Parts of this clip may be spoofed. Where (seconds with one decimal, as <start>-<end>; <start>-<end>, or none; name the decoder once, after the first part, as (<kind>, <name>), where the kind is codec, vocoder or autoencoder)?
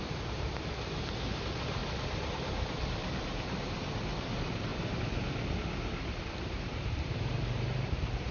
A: 0.0-1.8 (vocoder, BigVGAN v2); 2.3-4.7; 6.2-8.3